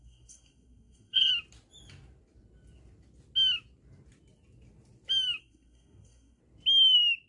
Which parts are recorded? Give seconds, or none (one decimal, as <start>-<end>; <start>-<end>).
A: 1.3-5.4; 6.4-7.3